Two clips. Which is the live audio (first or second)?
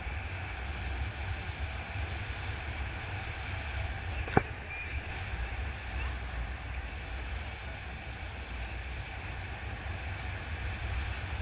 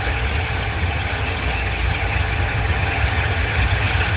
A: first